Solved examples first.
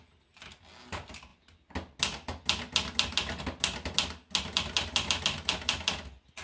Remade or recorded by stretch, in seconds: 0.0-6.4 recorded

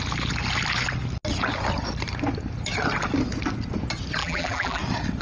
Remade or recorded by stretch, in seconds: 0.0-4.2 recorded; 4.2-4.8 remade; 4.8-5.2 recorded